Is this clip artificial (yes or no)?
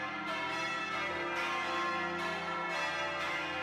no